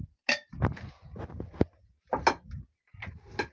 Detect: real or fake real